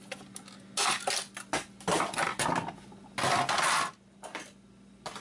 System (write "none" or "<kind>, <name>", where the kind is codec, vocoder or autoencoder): none